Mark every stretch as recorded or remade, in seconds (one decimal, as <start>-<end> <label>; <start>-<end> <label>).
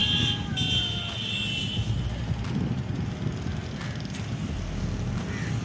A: 0.0-5.6 recorded